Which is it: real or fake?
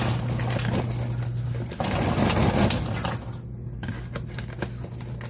real